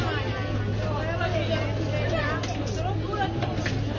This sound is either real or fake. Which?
real